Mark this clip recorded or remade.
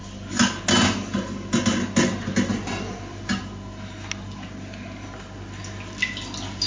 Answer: recorded